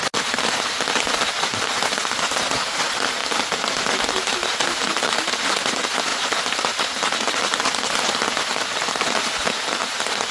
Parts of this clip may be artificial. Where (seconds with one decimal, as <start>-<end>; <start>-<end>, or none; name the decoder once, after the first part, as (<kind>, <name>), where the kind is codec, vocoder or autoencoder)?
none

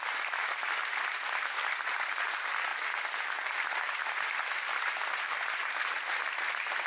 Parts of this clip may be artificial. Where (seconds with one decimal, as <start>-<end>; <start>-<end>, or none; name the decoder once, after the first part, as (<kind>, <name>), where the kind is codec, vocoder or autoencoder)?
none

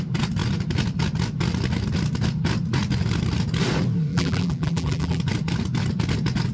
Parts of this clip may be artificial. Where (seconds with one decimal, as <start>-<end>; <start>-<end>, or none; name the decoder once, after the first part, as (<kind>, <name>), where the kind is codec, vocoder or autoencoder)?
4.1-5.2 (vocoder, BigVGAN v2)

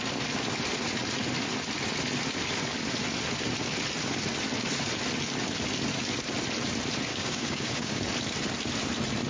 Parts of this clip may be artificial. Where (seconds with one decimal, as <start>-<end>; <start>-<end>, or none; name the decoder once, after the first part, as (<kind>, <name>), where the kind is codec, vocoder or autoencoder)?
7.1-8.0 (codec, DAC)